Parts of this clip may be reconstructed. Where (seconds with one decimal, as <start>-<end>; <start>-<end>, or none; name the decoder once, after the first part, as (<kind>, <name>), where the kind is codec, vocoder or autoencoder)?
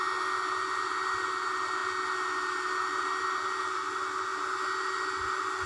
none